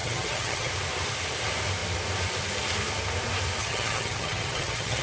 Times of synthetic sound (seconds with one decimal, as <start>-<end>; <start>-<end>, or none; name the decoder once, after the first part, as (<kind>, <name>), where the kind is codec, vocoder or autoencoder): 0.0-0.7 (vocoder, HiFi-GAN); 3.6-5.0